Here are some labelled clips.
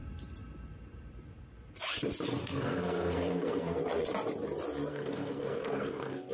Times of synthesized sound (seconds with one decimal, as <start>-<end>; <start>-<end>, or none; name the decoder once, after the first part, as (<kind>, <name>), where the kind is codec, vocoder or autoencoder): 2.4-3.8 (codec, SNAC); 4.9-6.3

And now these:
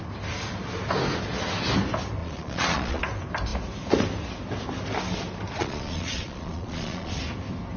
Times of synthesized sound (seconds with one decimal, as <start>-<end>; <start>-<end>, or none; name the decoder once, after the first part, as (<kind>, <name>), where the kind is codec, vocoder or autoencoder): 2.2-3.0 (vocoder, Vocos); 5.6-7.2

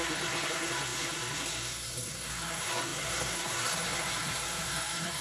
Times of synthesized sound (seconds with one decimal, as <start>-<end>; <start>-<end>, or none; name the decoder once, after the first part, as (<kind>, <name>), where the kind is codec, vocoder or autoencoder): 0.0-5.2 (codec, SNAC)

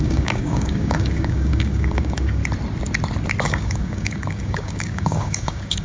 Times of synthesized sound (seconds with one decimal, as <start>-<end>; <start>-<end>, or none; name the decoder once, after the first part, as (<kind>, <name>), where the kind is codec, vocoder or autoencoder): 0.0-2.4 (codec, DAC); 3.4-5.8

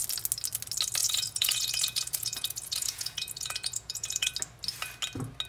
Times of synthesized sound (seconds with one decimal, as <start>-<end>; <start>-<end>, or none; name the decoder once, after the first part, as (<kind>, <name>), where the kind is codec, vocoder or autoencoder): 1.0-4.3 (vocoder, Vocos)

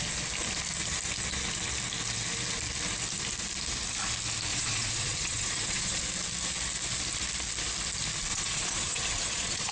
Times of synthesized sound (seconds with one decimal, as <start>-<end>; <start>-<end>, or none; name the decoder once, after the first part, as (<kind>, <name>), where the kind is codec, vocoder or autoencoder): 4.5-6.0 (vocoder, Vocos); 8.3-9.7

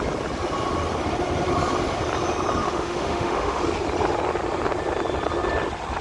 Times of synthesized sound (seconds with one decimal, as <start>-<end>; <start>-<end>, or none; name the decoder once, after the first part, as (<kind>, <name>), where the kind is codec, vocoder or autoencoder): 2.6-3.6 (autoencoder, DAC-VAE)

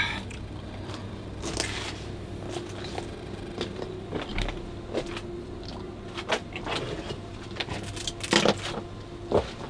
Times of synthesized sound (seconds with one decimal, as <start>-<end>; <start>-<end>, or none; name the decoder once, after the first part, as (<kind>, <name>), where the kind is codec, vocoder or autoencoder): none